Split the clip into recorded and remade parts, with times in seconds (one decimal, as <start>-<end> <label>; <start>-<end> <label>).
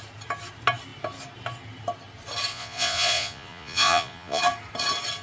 0.0-2.5 recorded; 2.5-4.4 remade; 4.4-5.2 recorded